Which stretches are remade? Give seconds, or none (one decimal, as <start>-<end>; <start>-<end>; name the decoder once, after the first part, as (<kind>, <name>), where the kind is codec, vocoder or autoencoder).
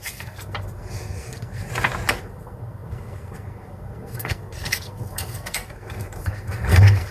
0.0-1.7 (codec, SNAC); 2.2-7.1